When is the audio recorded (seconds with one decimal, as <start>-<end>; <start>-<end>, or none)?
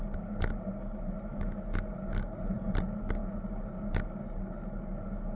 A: 0.0-1.3; 1.9-5.3